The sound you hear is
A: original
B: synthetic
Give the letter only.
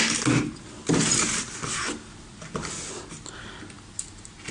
A